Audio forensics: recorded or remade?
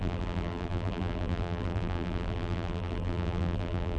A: remade